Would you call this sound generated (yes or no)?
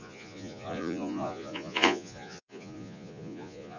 yes